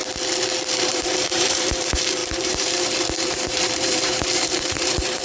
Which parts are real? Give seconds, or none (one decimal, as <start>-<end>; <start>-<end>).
0.0-0.8